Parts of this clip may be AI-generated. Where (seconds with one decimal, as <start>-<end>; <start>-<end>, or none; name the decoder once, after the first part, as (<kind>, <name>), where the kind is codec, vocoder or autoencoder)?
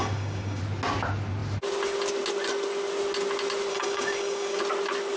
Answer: 0.0-0.6 (codec, DAC); 3.7-4.6